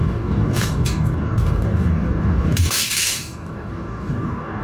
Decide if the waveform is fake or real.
fake